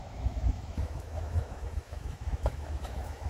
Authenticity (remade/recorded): remade